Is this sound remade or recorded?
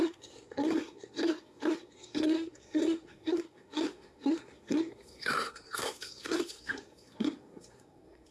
remade